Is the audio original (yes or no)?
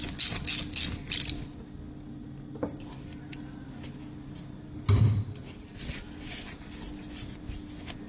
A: yes